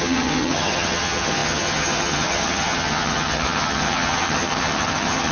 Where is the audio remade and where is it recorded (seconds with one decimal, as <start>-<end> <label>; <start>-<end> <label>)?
0.0-5.3 remade

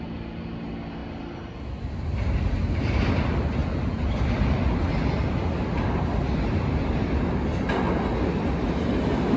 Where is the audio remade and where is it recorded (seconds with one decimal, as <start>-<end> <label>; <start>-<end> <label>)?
0.0-9.4 recorded

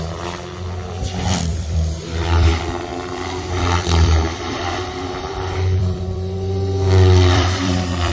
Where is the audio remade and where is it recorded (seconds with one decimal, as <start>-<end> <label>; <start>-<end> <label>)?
0.0-1.5 recorded; 1.5-2.5 remade; 2.5-2.9 recorded; 2.9-8.1 remade

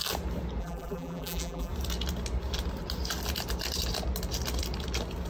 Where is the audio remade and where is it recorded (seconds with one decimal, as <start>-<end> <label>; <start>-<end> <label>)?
0.0-0.6 recorded; 0.6-1.7 remade; 1.7-5.3 recorded

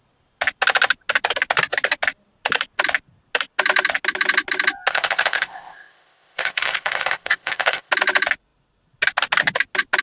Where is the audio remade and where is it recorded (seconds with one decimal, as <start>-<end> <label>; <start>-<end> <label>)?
0.0-4.9 recorded; 4.9-7.9 remade; 7.9-10.0 recorded

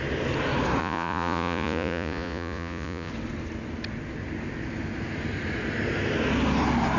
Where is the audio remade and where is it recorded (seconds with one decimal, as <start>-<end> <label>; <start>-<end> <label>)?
0.0-0.8 recorded; 0.8-3.1 remade; 3.1-7.0 recorded